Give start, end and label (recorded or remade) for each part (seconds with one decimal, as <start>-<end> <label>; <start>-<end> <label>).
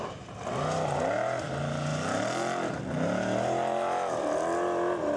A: 0.0-5.2 recorded